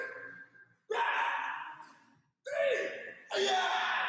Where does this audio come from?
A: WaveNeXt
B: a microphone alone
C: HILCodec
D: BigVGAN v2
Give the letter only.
B